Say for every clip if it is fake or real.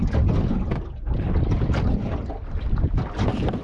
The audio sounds real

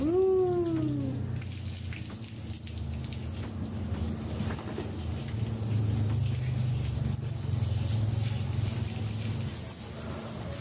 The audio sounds real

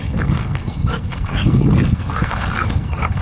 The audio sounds fake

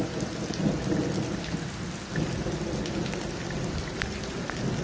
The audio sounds real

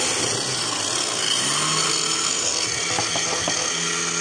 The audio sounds real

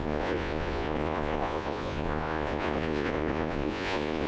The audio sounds fake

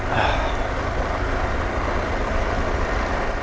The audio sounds real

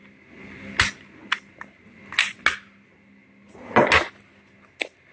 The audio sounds real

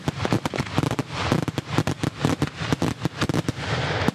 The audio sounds real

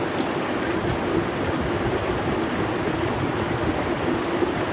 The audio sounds real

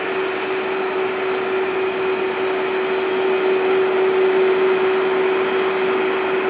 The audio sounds real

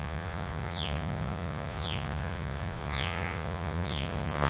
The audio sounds fake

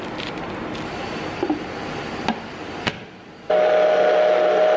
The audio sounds real